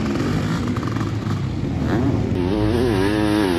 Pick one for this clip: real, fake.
real